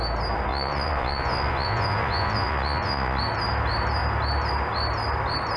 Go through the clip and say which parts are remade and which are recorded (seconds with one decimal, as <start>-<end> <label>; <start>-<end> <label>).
0.0-0.5 recorded; 0.5-3.2 remade; 3.2-5.6 recorded